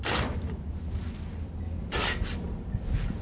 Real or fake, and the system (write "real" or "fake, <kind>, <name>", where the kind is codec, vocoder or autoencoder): real